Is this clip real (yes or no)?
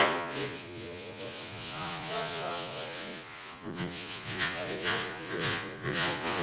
no